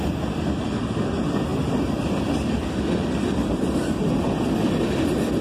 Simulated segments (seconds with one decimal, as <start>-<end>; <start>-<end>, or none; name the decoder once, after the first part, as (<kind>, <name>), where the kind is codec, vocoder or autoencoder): none